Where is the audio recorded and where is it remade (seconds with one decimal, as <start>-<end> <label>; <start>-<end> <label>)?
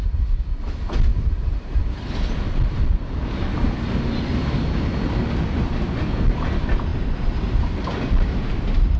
0.0-1.1 recorded; 1.1-1.8 remade; 1.8-9.0 recorded